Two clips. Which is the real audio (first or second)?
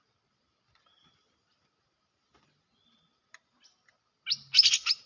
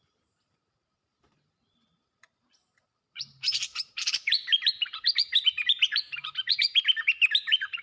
first